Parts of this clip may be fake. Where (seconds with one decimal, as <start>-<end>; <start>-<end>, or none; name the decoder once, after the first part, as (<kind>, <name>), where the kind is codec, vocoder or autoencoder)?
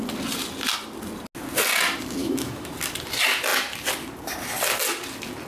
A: 2.2-2.7 (autoencoder, DAC-VAE)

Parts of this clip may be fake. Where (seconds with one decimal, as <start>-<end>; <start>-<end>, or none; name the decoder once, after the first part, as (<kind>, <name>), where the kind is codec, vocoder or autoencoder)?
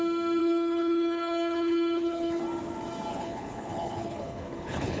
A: 0.4-2.4 (codec, HILCodec); 3.1-5.0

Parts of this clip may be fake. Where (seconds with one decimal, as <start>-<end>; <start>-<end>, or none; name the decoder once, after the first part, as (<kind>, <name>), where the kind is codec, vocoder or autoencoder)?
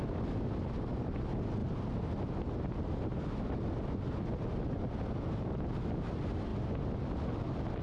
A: none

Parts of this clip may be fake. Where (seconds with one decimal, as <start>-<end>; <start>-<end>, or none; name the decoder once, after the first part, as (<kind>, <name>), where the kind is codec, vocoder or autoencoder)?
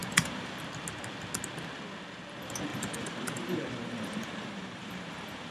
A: 0.0-0.6 (vocoder, BigVGAN v2); 2.7-5.5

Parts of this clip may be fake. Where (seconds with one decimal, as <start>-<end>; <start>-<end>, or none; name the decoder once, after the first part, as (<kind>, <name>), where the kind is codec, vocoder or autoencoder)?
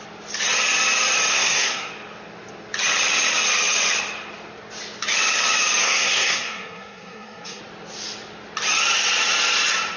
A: 1.3-1.9 (codec, SNAC); 5.8-7.6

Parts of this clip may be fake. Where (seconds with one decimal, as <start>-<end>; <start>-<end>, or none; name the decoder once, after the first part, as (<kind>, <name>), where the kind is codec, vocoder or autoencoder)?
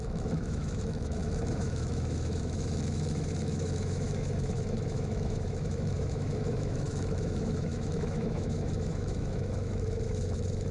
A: 0.0-10.7 (autoencoder, DAC-VAE)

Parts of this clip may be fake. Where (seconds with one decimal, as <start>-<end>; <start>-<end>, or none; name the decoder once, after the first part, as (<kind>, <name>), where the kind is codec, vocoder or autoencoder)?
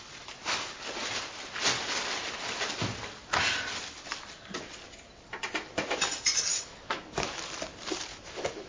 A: 6.5-7.4 (autoencoder, DAC-VAE); 8.1-8.7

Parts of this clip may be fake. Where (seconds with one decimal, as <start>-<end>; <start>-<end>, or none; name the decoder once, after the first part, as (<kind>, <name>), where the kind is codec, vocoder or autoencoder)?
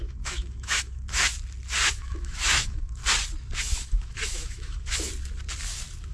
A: 0.0-1.3 (autoencoder, DAC-VAE); 1.9-3.0; 3.6-5.1